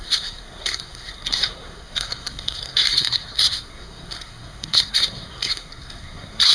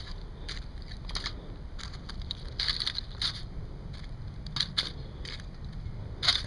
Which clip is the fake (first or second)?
first